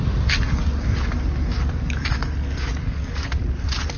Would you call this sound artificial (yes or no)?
no